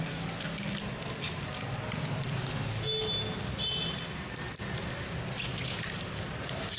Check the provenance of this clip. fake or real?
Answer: real